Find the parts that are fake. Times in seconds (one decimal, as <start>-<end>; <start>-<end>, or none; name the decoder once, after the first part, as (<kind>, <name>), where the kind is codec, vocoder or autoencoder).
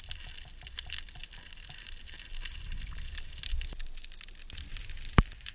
none